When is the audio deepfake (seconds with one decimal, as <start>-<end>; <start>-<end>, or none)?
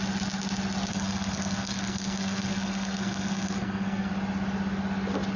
0.9-4.1